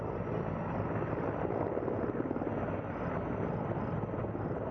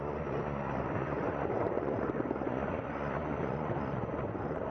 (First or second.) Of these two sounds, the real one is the first